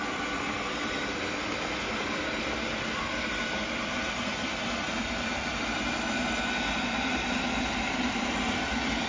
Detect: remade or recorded recorded